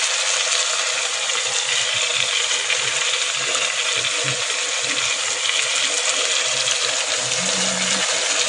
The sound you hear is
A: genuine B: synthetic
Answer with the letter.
A